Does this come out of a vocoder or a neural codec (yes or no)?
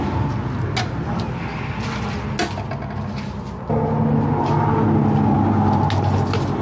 no